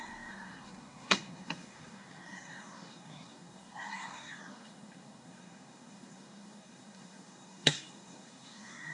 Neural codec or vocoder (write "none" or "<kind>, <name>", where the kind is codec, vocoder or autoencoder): codec, SNAC